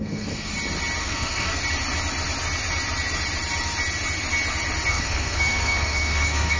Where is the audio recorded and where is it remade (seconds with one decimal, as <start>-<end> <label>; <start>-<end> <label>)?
0.0-0.5 remade; 0.5-1.0 recorded; 1.0-1.6 remade; 1.6-4.9 recorded; 4.9-6.6 remade